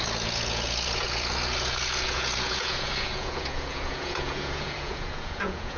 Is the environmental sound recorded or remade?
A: remade